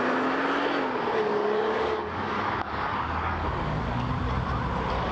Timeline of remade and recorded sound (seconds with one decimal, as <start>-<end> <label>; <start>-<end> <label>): 0.0-1.3 recorded; 1.3-4.1 remade; 4.1-5.1 recorded